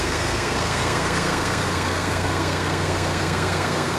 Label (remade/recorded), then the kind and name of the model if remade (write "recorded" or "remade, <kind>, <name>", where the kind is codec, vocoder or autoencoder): remade, codec, SNAC